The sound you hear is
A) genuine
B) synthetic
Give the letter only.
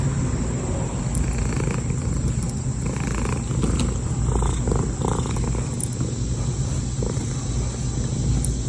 A